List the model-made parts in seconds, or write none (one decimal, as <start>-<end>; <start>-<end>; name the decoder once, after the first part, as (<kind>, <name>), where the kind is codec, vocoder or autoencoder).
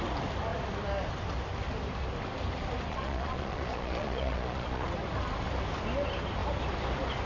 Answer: 2.9-4.9 (vocoder, Vocos)